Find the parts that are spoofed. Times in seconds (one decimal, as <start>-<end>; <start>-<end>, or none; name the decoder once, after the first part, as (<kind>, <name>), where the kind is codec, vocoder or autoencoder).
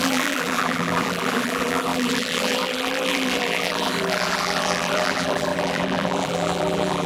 0.0-7.1 (vocoder, BigVGAN v2)